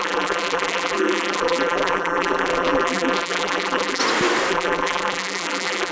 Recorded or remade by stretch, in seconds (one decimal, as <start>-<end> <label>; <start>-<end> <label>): 0.0-4.0 remade; 4.0-4.5 recorded; 4.5-5.9 remade